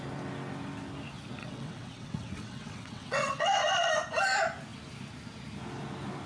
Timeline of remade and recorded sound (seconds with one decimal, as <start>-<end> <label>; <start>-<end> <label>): 0.0-1.4 recorded; 1.4-3.9 remade; 3.9-6.3 recorded